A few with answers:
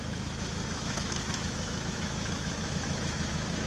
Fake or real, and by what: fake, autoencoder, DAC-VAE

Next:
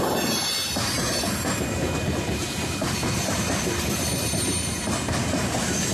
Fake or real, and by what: fake, vocoder, BigVGAN v2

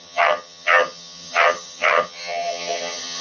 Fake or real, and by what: fake, vocoder, HiFi-GAN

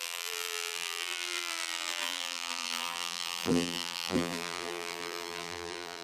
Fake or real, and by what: fake, vocoder, BigVGAN v2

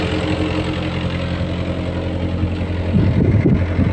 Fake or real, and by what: real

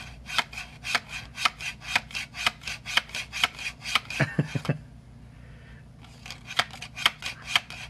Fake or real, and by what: real